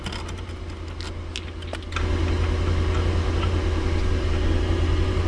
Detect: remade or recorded recorded